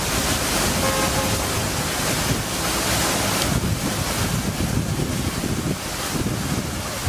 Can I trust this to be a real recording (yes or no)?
yes